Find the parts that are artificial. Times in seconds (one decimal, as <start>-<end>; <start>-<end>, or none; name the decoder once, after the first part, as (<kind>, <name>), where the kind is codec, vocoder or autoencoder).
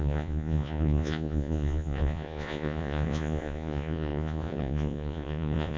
0.0-5.8 (vocoder, Vocos)